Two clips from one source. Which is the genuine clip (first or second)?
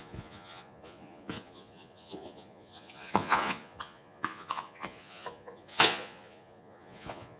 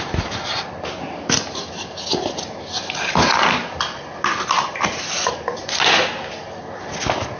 second